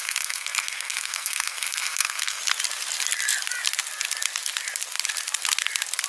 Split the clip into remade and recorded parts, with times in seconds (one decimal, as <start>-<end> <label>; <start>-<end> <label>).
0.0-2.4 remade; 2.4-6.1 recorded